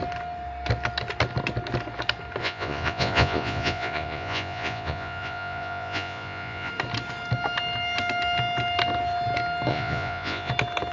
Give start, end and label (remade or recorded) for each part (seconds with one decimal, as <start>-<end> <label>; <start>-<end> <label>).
0.0-2.4 recorded; 2.4-6.7 remade; 6.7-9.7 recorded; 9.7-10.5 remade; 10.5-10.9 recorded